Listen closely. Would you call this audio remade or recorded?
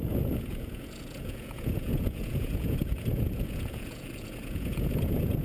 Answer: remade